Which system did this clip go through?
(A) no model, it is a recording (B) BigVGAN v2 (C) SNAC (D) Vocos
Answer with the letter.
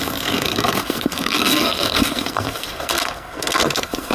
C